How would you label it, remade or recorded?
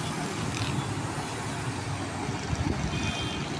recorded